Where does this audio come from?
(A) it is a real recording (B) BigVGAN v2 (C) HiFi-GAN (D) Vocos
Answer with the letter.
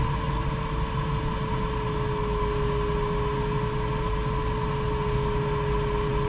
A